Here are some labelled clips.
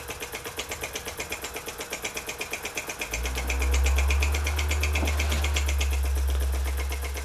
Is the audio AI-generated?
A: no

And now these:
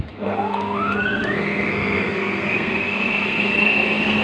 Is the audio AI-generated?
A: yes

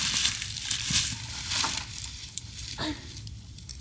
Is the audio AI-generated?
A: yes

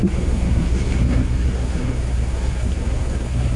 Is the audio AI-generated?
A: yes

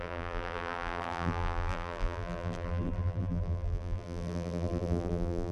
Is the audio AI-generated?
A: yes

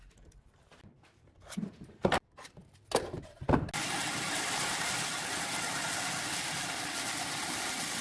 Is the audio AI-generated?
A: no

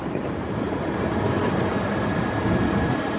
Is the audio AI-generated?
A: yes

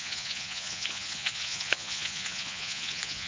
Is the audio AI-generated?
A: yes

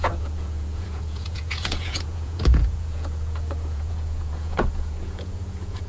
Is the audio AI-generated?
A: yes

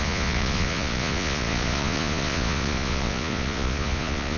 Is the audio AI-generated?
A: yes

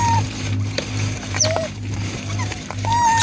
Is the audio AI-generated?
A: yes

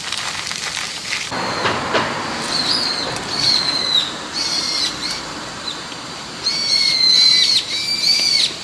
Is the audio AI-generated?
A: no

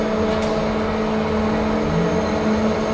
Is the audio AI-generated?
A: no